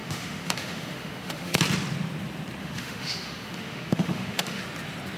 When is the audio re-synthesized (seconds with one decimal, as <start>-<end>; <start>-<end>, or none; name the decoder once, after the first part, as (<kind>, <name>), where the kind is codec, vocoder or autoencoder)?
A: 0.0-1.6 (autoencoder, DAC-VAE); 2.6-4.6